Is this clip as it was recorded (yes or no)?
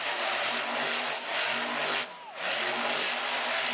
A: yes